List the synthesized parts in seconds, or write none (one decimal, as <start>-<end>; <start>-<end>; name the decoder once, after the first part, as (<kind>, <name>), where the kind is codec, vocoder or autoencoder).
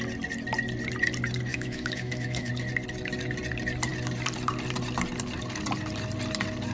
1.5-2.5 (autoencoder, DAC-VAE)